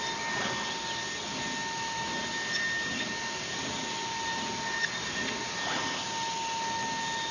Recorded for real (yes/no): yes